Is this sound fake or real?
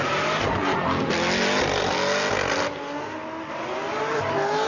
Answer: real